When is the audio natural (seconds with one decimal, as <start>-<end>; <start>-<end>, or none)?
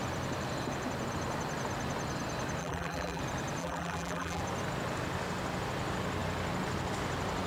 0.0-2.6; 3.2-3.6; 4.4-7.5